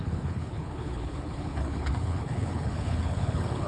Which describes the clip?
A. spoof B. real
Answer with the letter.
A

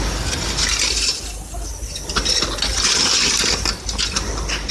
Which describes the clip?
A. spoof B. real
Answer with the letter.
B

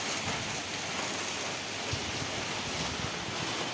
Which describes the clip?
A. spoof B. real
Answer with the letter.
B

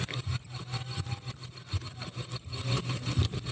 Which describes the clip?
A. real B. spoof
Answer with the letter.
A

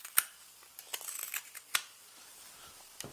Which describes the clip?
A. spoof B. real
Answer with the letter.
B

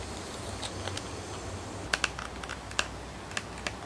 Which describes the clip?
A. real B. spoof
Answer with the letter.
A